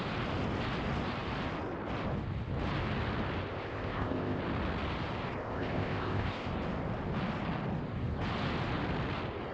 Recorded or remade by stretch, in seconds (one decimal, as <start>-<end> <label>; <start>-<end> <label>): 0.0-3.5 recorded; 3.5-4.4 remade; 4.4-5.4 recorded; 5.4-6.5 remade; 6.5-9.5 recorded